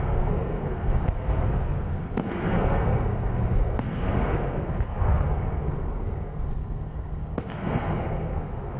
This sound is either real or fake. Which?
fake